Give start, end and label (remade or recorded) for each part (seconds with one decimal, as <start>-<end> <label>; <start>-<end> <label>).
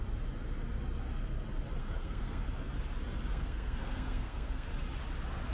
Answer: 0.0-1.8 recorded; 1.8-2.4 remade; 2.4-3.3 recorded; 3.3-4.7 remade; 4.7-5.5 recorded